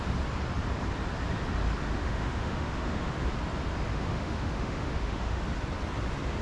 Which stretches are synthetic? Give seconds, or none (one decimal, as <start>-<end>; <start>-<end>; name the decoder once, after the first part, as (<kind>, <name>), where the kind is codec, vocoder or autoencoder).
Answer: 2.0-3.1 (autoencoder, DAC-VAE); 3.9-5.4